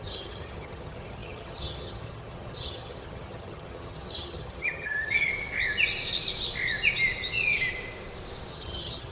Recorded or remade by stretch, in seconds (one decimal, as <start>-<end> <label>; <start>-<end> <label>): 0.0-5.3 remade; 5.3-8.5 recorded; 8.5-9.1 remade